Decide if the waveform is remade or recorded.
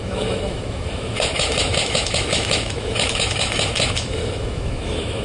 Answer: remade